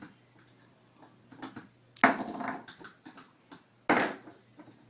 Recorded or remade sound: recorded